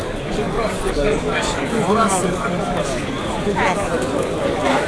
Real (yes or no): no